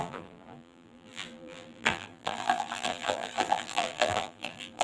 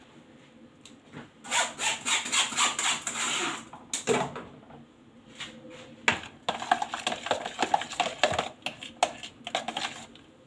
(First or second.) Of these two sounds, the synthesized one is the first